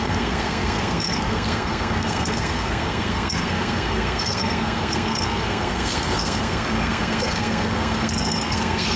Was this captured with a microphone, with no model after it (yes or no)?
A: no